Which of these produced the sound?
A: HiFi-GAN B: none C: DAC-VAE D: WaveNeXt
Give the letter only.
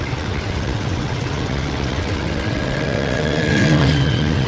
D